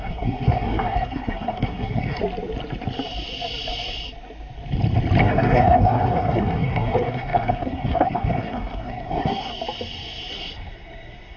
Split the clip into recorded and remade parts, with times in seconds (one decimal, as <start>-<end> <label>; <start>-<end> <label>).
0.0-2.2 remade; 2.2-5.2 recorded; 5.2-9.5 remade; 9.5-10.3 recorded; 10.3-11.4 remade